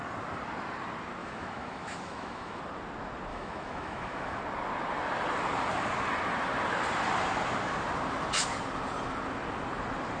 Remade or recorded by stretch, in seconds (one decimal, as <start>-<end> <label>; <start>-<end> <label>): 0.0-1.2 recorded; 1.2-2.6 remade; 2.6-3.3 recorded; 3.3-4.4 remade; 4.4-10.2 recorded